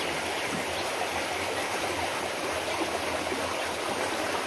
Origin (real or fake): real